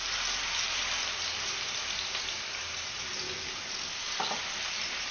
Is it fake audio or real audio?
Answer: real